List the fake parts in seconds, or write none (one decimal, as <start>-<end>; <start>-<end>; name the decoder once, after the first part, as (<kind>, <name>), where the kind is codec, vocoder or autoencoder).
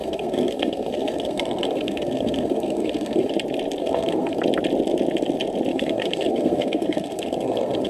0.0-3.3 (codec, SNAC); 3.8-4.4; 5.7-7.9